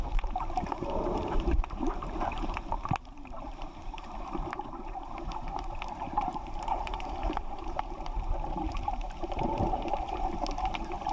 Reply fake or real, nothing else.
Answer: fake